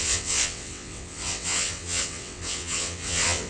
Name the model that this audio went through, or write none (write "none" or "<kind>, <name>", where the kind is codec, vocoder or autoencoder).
vocoder, WaveNeXt